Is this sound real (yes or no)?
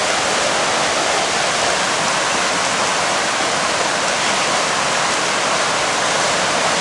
yes